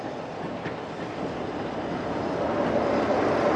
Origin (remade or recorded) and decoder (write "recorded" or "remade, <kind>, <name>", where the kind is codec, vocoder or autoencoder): recorded